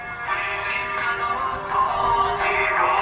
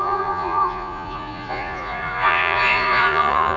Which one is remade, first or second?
second